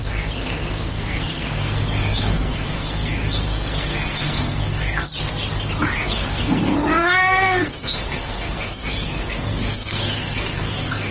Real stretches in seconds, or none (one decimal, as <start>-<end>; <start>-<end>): 5.1-6.0